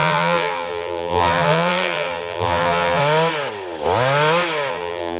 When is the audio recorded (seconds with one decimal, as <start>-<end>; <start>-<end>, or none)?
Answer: 3.0-4.7